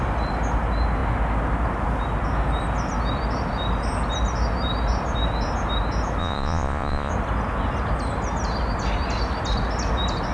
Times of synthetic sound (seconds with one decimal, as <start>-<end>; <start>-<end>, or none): 6.2-7.1